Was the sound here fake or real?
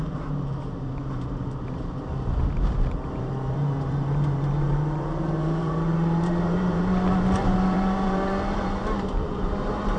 fake